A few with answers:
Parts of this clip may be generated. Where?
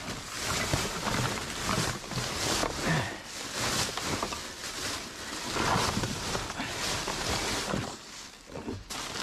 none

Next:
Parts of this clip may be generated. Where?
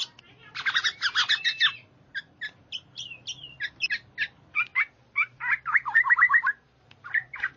0.4-0.9 (vocoder, BigVGAN v2); 4.7-7.6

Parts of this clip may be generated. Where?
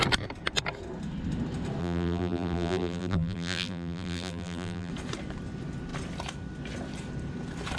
1.8-4.9 (vocoder, BigVGAN v2)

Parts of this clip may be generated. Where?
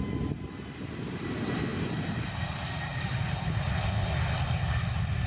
2.9-3.7 (vocoder, BigVGAN v2)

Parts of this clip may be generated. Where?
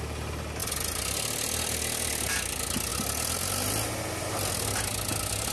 none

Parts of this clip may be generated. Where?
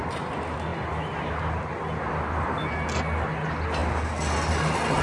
none